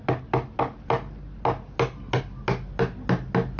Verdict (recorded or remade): recorded